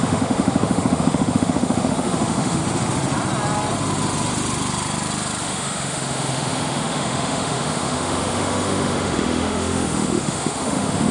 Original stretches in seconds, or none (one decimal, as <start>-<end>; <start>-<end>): 2.6-5.4